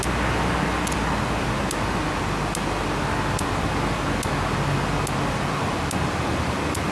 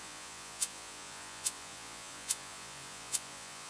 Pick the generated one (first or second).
second